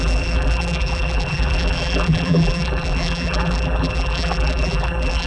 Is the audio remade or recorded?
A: remade